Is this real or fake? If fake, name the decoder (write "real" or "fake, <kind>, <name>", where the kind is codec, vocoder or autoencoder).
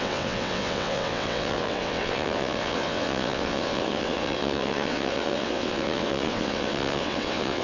fake, vocoder, WaveNeXt